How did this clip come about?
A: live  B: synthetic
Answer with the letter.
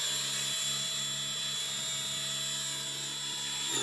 A